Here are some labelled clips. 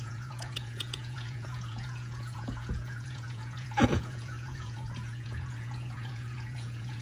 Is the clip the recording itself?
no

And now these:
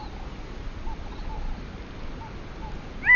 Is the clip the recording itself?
yes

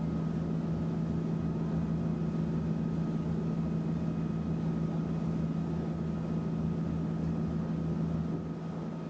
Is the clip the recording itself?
yes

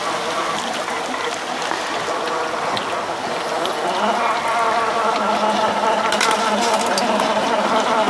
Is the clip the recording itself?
yes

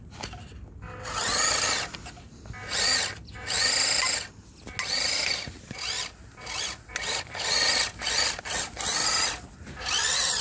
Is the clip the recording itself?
yes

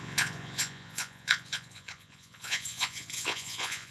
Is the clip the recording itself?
no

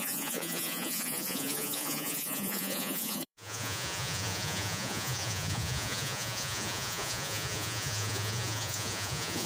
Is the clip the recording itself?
no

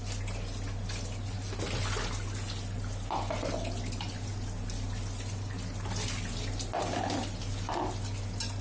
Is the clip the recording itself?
yes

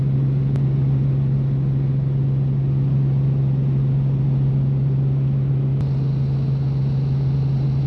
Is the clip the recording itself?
yes